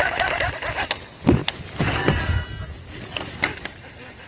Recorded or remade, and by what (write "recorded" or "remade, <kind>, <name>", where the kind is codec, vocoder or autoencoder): recorded